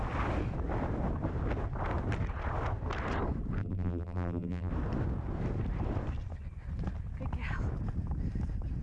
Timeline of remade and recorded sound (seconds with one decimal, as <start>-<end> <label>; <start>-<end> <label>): 0.0-3.6 recorded; 3.6-4.7 remade; 4.7-8.8 recorded